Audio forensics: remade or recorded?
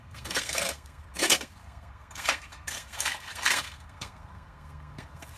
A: remade